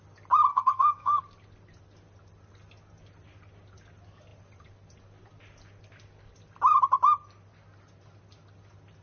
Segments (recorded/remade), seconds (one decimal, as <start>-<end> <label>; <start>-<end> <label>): 0.0-0.5 recorded; 0.5-1.2 remade; 1.2-9.0 recorded